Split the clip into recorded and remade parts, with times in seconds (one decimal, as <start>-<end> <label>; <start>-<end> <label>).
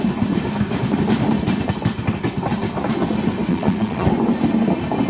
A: 0.0-3.5 recorded; 3.5-4.1 remade; 4.1-5.1 recorded